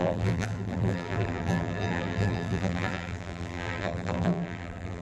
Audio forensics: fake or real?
fake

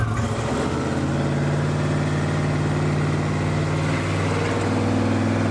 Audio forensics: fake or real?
real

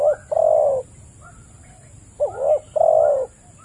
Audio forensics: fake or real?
real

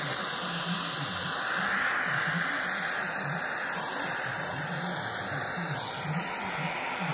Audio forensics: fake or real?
real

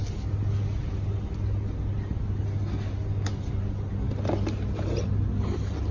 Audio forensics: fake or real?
real